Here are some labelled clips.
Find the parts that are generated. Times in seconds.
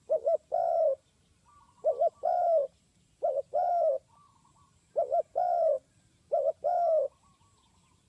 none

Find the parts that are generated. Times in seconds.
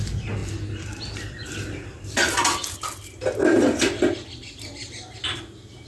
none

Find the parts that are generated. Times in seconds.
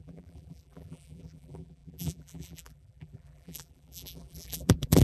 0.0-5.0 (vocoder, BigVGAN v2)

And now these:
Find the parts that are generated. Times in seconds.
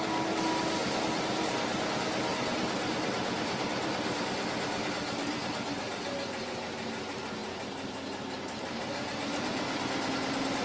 2.3-4.2 (vocoder, BigVGAN v2)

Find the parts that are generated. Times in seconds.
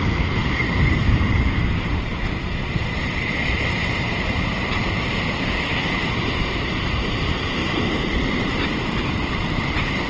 0.0-2.1 (vocoder, BigVGAN v2); 2.9-7.6; 8.5-10.1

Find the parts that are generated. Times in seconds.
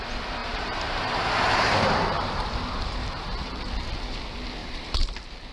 0.4-3.7 (vocoder, BigVGAN v2); 4.6-5.1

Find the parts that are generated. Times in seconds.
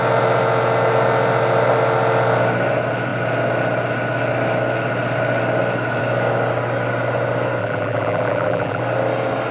7.6-8.8 (vocoder, BigVGAN v2)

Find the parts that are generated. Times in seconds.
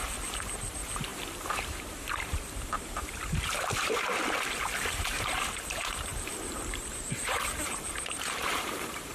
0.0-9.1 (vocoder, BigVGAN v2)